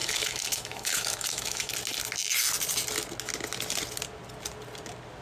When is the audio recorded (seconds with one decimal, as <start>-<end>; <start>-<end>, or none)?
1.7-5.2